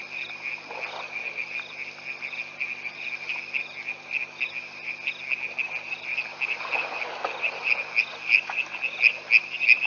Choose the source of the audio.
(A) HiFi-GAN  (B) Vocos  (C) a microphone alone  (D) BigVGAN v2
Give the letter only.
C